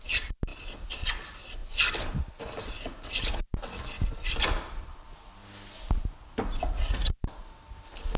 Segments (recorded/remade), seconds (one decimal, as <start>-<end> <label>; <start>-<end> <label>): 0.0-8.2 recorded